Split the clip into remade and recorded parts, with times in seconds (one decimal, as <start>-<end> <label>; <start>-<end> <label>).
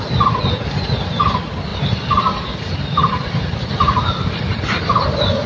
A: 0.0-5.5 recorded